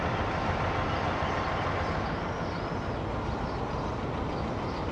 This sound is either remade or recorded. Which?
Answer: recorded